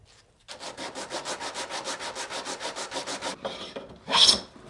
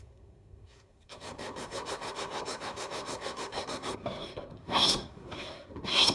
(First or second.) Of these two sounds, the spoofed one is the second